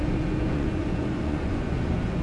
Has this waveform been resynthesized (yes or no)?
yes